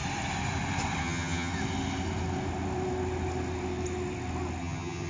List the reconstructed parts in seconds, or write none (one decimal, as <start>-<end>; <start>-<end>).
1.0-1.5; 4.6-5.1